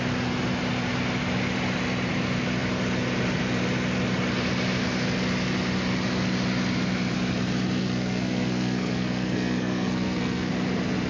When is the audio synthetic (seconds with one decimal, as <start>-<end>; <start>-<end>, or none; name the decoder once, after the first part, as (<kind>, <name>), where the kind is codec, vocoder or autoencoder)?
7.8-10.5 (codec, SNAC)